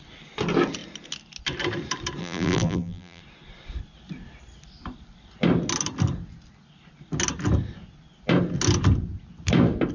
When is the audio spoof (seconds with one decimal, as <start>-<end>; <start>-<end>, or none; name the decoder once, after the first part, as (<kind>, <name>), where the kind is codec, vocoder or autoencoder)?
2.2-3.2 (vocoder, BigVGAN v2)